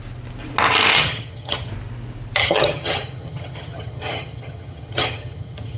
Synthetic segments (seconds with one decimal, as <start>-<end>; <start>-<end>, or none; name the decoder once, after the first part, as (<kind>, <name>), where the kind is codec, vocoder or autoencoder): 0.9-1.7 (vocoder, HiFi-GAN); 2.4-5.8